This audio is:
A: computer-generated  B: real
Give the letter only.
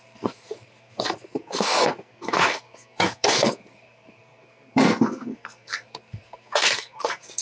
A